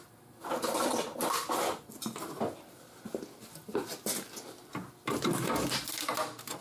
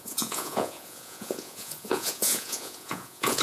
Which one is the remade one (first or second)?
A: second